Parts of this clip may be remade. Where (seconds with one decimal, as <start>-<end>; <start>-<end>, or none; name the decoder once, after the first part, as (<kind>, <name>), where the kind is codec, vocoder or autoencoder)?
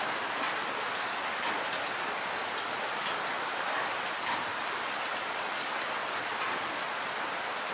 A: 4.5-6.6 (vocoder, BigVGAN v2)